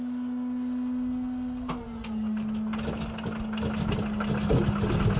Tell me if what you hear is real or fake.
real